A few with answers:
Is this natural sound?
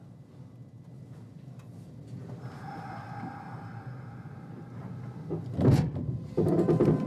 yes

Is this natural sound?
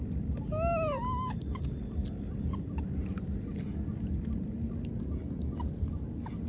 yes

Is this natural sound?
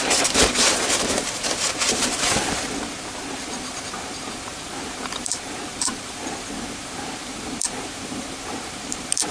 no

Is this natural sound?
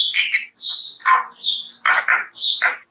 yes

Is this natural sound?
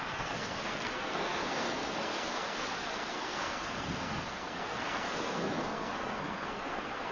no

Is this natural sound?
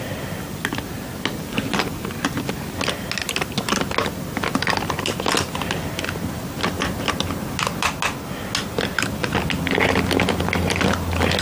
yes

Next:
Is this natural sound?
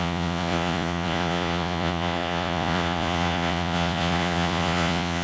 no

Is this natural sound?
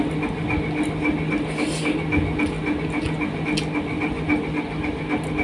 yes